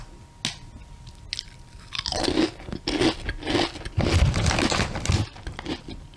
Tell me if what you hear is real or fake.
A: real